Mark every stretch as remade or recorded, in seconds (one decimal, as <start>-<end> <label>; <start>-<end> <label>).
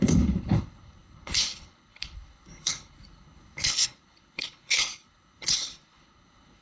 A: 0.0-6.6 remade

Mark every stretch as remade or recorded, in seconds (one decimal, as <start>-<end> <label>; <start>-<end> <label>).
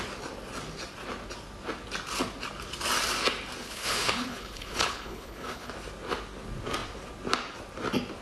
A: 0.0-3.6 recorded; 3.6-5.7 remade; 5.7-8.2 recorded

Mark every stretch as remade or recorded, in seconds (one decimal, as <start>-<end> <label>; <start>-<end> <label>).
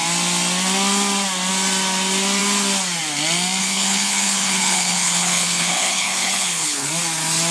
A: 0.0-3.6 recorded; 3.6-6.9 remade; 6.9-7.5 recorded